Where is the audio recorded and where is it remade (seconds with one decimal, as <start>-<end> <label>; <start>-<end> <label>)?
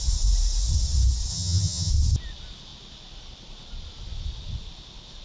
0.0-1.3 recorded; 1.3-1.9 remade; 1.9-5.2 recorded